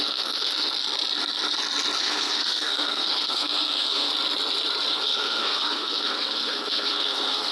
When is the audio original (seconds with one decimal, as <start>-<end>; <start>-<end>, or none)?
0.8-2.0; 4.1-4.9